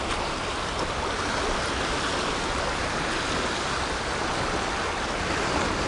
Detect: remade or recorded recorded